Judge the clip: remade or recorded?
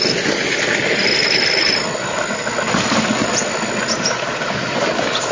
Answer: recorded